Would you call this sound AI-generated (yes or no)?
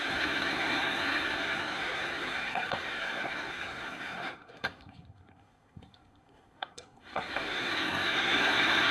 yes